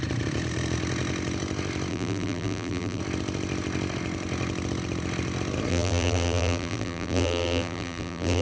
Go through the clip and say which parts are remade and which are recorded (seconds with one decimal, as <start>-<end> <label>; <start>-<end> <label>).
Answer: 0.0-1.9 recorded; 1.9-3.0 remade; 3.0-5.7 recorded; 5.7-8.4 remade